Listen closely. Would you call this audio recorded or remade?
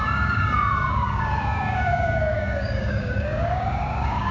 remade